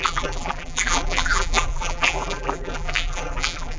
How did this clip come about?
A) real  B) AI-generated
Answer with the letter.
B